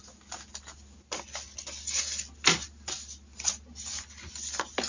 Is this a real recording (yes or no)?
yes